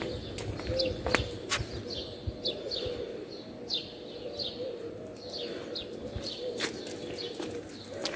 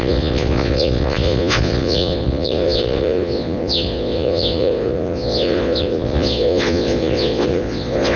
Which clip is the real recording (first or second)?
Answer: first